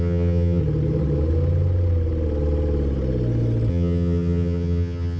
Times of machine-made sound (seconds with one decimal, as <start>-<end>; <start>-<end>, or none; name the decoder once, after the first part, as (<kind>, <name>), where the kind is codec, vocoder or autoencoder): 0.0-0.6 (vocoder, HiFi-GAN); 3.7-5.2